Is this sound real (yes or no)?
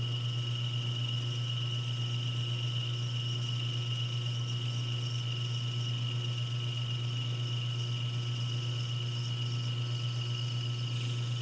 yes